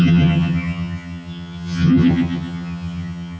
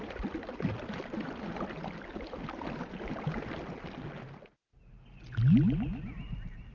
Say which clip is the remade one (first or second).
first